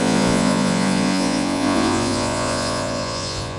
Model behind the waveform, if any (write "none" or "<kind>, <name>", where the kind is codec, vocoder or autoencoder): vocoder, Vocos